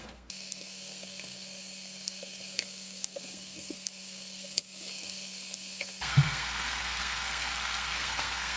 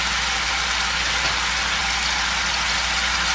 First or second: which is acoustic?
second